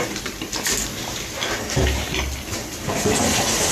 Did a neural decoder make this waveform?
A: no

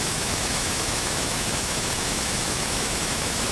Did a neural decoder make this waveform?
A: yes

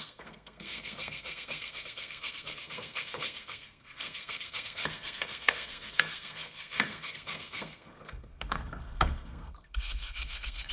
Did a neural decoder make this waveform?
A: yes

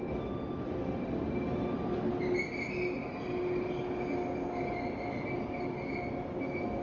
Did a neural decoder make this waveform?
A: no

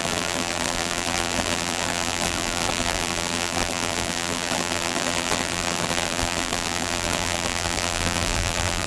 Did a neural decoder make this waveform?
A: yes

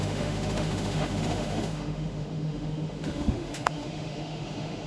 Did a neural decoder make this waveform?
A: yes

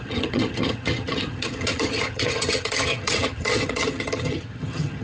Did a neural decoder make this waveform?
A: yes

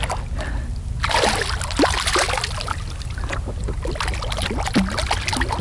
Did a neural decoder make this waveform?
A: no